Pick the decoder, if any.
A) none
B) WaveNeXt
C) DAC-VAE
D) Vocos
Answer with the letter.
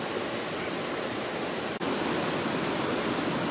A